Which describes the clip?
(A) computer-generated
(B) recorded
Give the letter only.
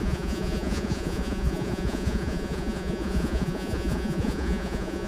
A